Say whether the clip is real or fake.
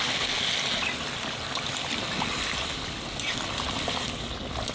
real